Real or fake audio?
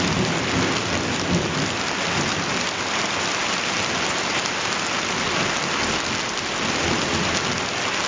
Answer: real